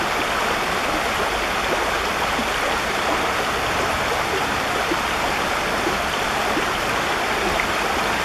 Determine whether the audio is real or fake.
real